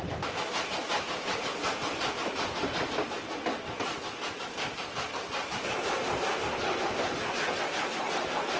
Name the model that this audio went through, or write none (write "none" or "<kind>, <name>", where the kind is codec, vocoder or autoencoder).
none